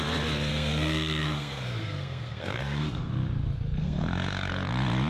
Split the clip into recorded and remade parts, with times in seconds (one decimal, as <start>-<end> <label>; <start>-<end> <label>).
0.0-0.5 recorded; 0.5-3.1 remade; 3.1-3.8 recorded; 3.8-4.5 remade; 4.5-5.1 recorded